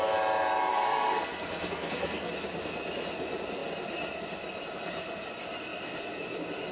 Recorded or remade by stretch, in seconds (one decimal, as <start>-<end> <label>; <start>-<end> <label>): 0.0-0.7 recorded; 0.7-2.3 remade; 2.3-6.7 recorded